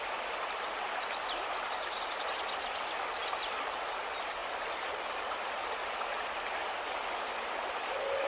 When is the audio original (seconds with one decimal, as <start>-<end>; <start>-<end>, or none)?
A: 0.0-8.3